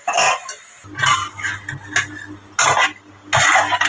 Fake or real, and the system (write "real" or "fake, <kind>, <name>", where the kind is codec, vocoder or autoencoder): real